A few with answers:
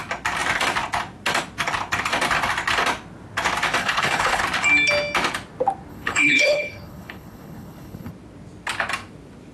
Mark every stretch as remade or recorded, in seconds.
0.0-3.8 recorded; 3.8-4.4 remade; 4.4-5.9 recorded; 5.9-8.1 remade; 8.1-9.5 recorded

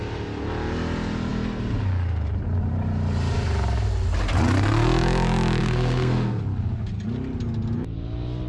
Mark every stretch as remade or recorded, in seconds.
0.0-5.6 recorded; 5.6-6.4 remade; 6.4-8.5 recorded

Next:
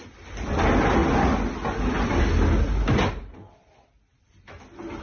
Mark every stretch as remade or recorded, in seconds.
0.0-5.0 recorded

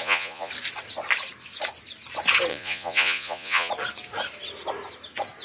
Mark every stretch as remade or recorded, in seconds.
0.0-0.5 remade; 0.5-2.5 recorded; 2.5-3.7 remade; 3.7-5.4 recorded

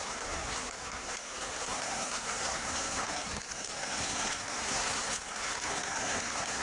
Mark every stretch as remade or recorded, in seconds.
0.0-6.6 remade

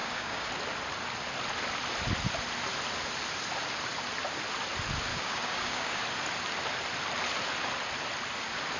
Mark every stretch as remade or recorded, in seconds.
0.0-0.5 remade; 0.5-5.1 recorded; 5.1-6.0 remade; 6.0-8.8 recorded